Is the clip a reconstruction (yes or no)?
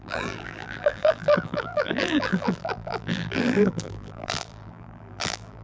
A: yes